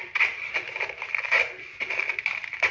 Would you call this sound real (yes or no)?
no